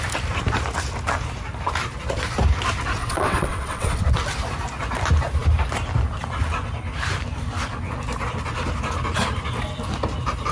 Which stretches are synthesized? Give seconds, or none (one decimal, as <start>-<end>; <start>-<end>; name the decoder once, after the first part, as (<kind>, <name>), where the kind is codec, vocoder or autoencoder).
3.0-4.0 (vocoder, WaveNeXt)